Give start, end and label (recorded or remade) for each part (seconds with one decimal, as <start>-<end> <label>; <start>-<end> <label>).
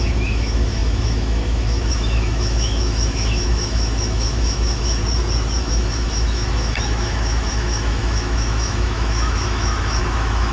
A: 0.0-5.0 remade; 5.0-5.6 recorded; 5.6-10.5 remade